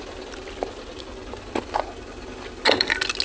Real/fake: real